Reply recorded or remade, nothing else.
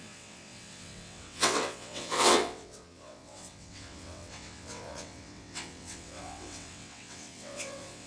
remade